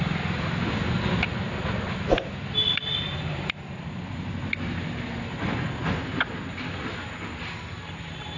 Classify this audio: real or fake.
real